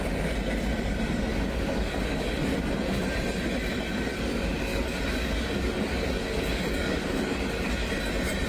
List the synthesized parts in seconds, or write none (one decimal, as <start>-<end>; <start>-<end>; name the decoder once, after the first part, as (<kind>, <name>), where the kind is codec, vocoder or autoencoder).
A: 1.3-2.4 (codec, DAC); 4.1-7.9